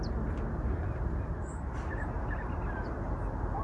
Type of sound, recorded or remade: recorded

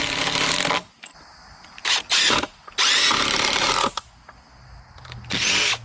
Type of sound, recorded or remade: recorded